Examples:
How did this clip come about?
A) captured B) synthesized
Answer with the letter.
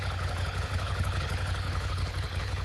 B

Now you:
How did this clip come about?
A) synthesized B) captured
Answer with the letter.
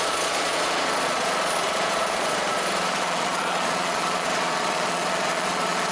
A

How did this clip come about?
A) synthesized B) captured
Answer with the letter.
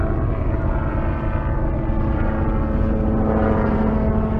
B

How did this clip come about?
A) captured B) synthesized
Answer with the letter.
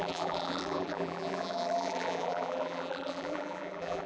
B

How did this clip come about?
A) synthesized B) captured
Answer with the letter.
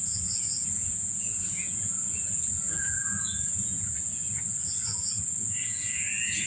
A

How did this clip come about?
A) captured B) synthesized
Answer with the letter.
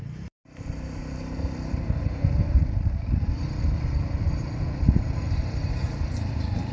B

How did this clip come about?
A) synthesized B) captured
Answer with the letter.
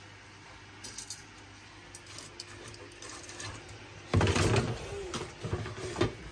B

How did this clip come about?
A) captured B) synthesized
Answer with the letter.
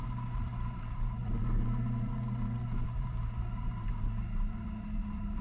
B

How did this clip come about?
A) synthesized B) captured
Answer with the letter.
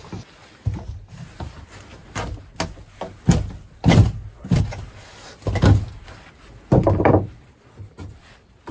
B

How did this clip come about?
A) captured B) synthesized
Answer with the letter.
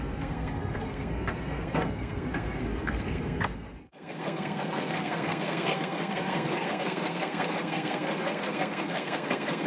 B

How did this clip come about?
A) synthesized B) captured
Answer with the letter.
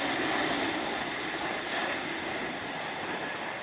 A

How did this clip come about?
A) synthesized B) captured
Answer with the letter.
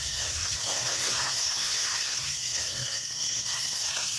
A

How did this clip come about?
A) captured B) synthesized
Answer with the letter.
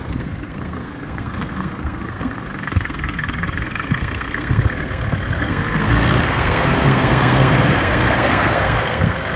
B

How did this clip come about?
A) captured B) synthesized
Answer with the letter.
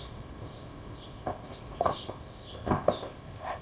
B